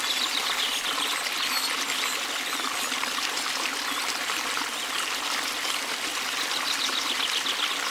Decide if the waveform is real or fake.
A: real